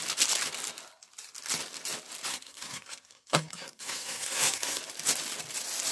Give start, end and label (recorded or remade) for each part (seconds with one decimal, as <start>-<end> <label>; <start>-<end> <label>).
0.0-2.3 recorded; 2.3-4.8 remade; 4.8-5.9 recorded